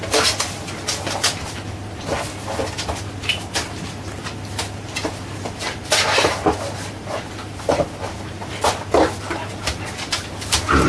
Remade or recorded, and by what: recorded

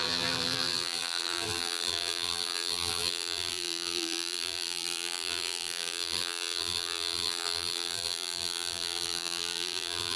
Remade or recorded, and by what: remade, vocoder, BigVGAN v2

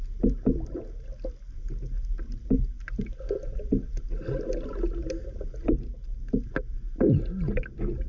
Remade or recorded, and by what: recorded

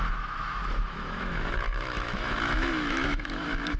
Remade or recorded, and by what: remade, autoencoder, DAC-VAE